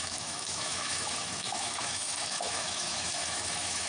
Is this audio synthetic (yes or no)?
yes